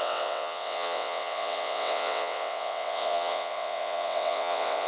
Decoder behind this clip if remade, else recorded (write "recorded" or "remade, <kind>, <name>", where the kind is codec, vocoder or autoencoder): remade, vocoder, WaveNeXt